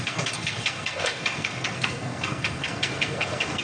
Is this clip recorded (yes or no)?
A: no